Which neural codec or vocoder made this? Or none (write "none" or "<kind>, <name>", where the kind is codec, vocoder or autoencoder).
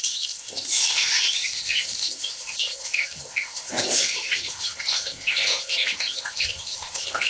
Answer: codec, ZipCodec